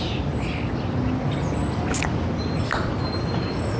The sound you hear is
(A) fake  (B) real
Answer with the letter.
B